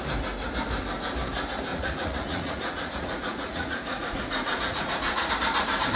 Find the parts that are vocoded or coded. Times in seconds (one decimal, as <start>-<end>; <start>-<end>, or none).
1.7-5.3